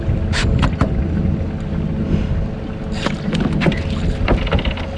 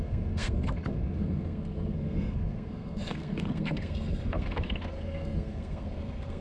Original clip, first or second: first